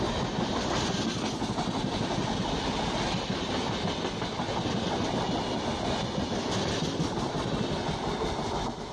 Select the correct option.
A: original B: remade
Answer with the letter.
A